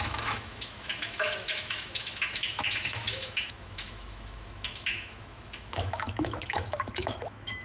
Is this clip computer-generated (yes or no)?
yes